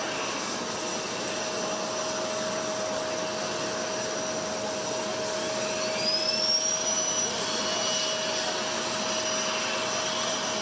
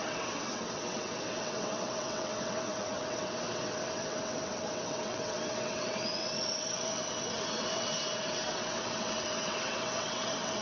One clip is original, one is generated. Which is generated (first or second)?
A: second